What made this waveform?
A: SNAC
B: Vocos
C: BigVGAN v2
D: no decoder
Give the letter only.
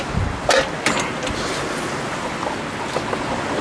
D